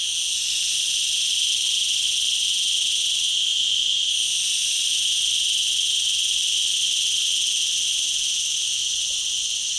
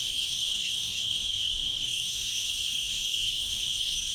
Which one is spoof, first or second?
second